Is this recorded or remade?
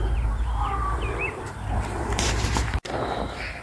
remade